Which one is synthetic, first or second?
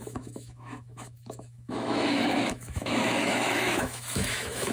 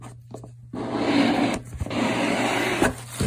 first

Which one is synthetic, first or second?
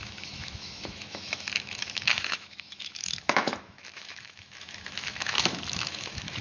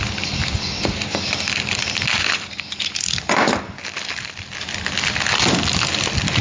first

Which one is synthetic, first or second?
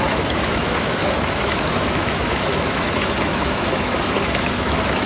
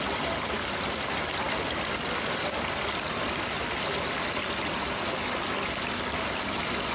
first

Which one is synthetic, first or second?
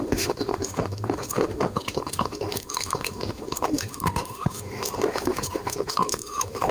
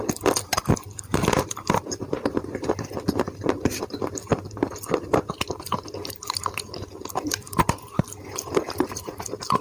first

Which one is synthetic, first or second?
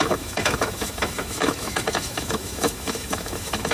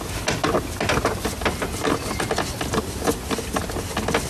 first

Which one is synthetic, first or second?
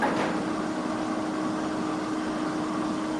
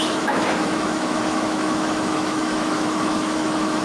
second